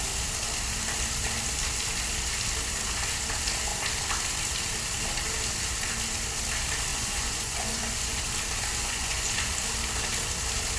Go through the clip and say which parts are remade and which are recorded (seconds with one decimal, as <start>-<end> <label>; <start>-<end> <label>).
0.0-6.9 recorded; 6.9-8.2 remade; 8.2-8.8 recorded; 8.8-9.5 remade; 9.5-10.8 recorded